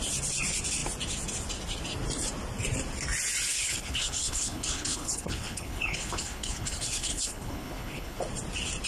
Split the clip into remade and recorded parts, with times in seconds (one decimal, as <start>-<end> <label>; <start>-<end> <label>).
0.0-3.5 recorded; 3.5-8.2 remade; 8.2-8.9 recorded